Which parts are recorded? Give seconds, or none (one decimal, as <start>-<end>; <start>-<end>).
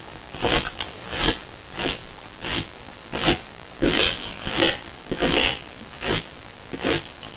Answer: none